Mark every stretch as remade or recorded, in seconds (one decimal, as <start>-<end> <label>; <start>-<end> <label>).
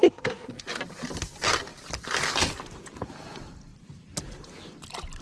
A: 0.0-0.5 remade; 0.5-5.2 recorded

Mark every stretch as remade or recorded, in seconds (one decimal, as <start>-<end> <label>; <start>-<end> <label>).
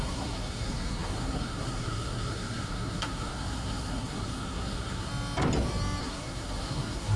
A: 0.0-5.1 remade; 5.1-6.0 recorded; 6.0-7.2 remade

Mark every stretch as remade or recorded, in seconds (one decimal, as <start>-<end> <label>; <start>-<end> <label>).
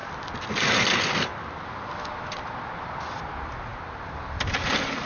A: 0.0-5.1 recorded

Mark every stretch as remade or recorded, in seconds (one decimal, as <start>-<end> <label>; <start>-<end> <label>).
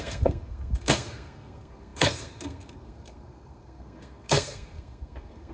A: 0.0-5.5 remade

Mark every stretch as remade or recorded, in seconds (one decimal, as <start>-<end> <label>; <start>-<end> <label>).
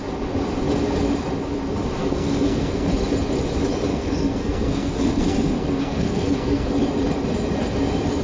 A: 0.0-2.0 recorded; 2.0-2.9 remade; 2.9-3.9 recorded; 3.9-6.7 remade; 6.7-8.2 recorded